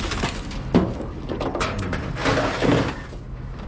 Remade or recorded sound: recorded